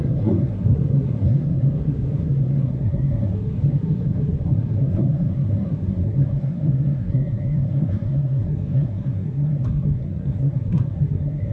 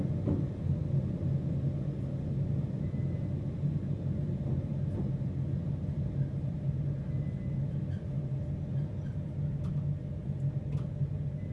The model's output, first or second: first